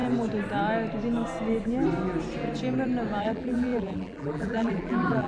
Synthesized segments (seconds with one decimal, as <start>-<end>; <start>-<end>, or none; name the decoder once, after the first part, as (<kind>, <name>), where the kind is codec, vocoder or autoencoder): 3.2-5.3 (vocoder, BigVGAN v2)